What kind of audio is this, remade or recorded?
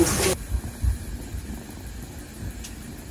recorded